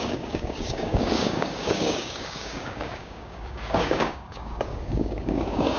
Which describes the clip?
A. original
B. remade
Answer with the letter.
B